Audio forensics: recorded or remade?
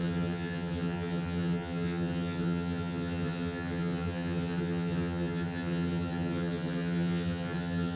remade